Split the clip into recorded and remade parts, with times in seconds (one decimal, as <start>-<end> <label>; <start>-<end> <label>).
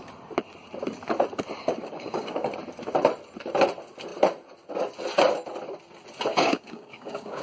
0.0-1.7 recorded; 1.7-2.5 remade; 2.5-6.3 recorded; 6.3-7.4 remade